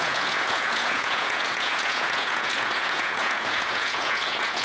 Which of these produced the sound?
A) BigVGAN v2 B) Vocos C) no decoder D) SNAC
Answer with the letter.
B